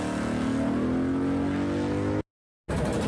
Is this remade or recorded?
recorded